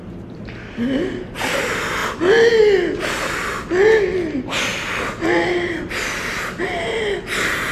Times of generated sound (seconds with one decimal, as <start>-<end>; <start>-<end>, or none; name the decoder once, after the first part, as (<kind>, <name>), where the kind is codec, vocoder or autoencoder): none